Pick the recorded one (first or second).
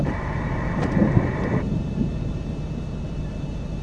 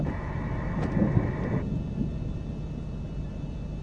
second